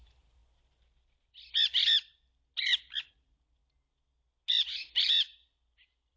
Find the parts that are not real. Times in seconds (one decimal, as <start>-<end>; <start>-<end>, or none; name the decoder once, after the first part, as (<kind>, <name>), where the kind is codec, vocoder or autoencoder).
0.0-0.4 (vocoder, BigVGAN v2); 3.1-3.6; 5.0-6.2